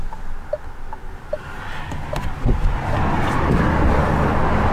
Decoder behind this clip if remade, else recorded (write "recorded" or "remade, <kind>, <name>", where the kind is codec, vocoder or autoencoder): recorded